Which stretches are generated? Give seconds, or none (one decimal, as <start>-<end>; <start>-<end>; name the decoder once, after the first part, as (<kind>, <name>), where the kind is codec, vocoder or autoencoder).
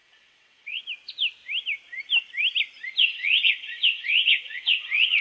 0.0-0.8 (vocoder, WaveNeXt); 3.0-5.2